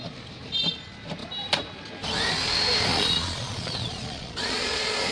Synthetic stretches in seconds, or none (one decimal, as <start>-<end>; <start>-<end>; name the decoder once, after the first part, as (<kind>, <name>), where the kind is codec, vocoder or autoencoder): 2.9-5.1 (vocoder, Vocos)